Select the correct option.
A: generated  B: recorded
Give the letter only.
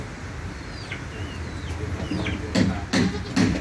B